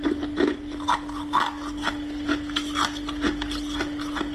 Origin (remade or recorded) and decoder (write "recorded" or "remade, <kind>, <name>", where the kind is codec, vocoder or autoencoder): recorded